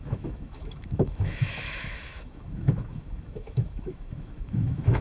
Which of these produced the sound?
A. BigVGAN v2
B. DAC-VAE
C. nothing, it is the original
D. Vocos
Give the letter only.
B